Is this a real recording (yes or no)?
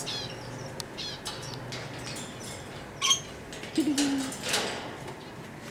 yes